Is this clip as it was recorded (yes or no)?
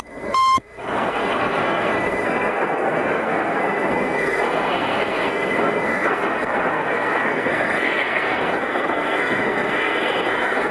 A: no